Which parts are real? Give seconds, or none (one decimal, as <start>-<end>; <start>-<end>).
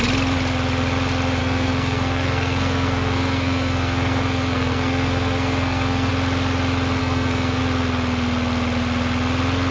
0.0-1.4; 6.1-7.0; 7.6-9.7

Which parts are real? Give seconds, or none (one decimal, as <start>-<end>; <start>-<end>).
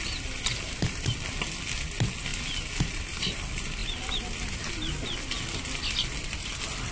0.0-6.9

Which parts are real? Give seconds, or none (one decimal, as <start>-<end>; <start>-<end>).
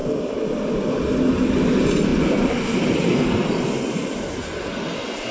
0.0-5.3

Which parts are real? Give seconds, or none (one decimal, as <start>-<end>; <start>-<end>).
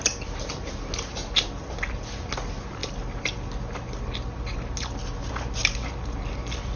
0.0-6.8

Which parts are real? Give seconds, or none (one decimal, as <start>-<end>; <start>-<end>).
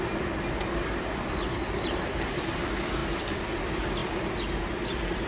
0.0-5.3